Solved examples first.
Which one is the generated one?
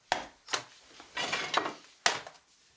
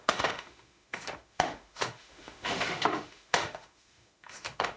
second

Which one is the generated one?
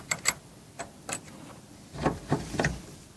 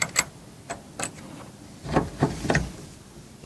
first